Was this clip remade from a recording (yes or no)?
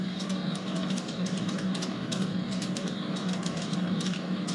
yes